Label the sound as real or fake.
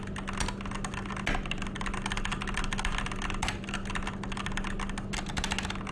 real